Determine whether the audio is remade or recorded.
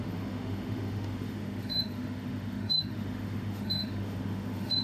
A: remade